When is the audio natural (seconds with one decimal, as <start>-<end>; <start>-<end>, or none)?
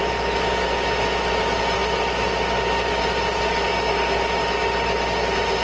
0.0-5.6